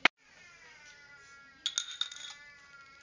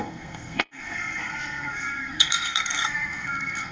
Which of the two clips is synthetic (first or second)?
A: second